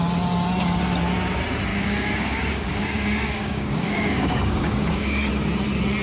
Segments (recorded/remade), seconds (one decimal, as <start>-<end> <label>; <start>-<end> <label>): 0.0-1.7 recorded; 1.7-5.3 remade; 5.3-6.0 recorded